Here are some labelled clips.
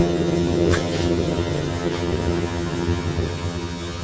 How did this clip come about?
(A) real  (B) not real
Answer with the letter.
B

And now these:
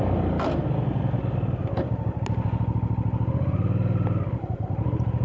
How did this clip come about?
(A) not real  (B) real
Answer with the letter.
B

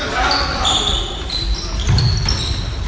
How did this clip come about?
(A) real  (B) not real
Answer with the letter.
A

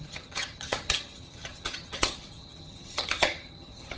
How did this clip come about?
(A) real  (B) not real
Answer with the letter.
B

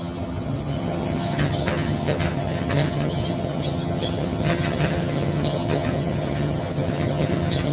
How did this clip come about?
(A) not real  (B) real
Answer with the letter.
A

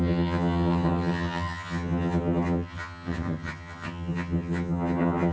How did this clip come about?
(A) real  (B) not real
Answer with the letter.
B